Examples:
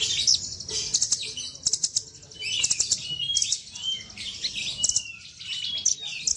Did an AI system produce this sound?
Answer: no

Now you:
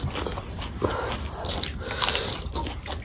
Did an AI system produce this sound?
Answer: no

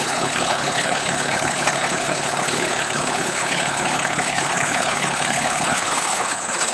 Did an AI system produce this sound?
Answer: yes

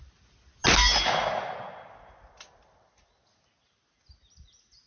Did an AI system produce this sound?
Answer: no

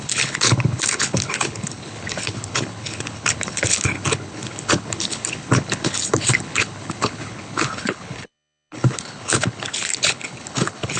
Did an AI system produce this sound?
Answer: yes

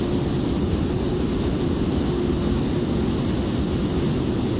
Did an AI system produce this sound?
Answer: no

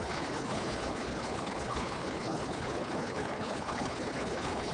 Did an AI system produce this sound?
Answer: yes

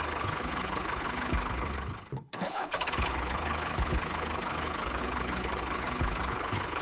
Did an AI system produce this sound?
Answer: yes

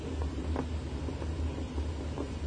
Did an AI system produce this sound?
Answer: no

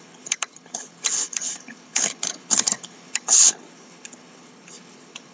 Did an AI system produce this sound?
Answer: yes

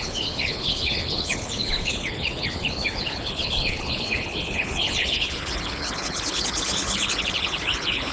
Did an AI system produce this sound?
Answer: yes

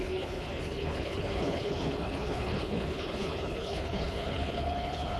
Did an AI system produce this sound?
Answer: yes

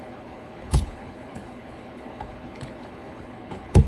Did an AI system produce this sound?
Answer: yes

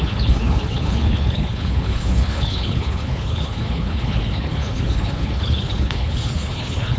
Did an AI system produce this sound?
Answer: yes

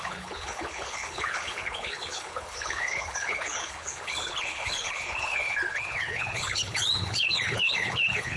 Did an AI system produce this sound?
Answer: yes